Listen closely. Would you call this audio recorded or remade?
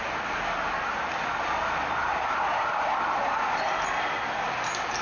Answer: recorded